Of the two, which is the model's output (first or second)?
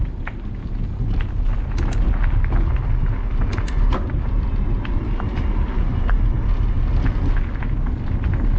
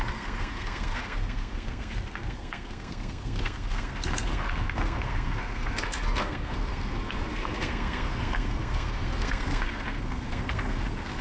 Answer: second